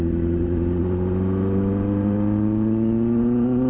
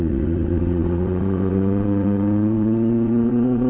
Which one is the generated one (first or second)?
second